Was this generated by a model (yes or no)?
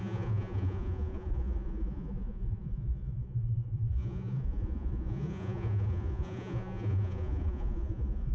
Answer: yes